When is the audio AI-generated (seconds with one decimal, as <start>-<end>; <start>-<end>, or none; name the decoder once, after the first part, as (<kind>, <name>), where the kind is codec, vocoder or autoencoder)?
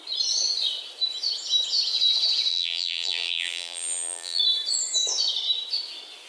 2.5-4.4 (vocoder, BigVGAN v2)